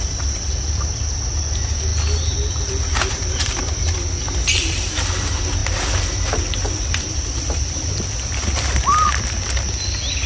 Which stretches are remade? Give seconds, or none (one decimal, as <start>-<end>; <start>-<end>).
none